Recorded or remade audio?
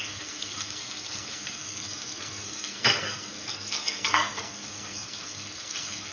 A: remade